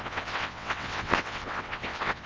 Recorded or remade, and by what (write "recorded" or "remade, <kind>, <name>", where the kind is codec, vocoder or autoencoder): remade, vocoder, WaveNeXt